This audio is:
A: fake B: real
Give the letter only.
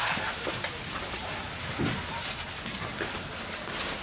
B